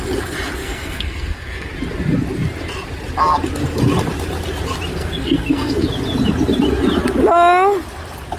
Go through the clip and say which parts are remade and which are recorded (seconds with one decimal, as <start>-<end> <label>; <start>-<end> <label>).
0.0-0.6 recorded; 0.6-1.7 remade; 1.7-4.9 recorded; 4.9-5.9 remade; 5.9-8.4 recorded